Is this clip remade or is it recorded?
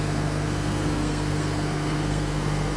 remade